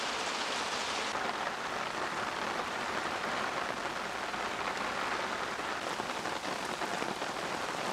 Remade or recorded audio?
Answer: recorded